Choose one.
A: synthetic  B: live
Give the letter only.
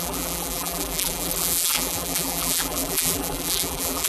A